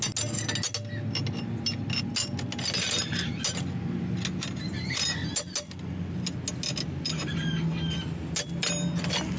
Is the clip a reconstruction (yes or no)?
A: no